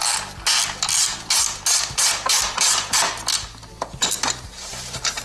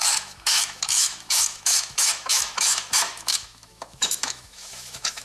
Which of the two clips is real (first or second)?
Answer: first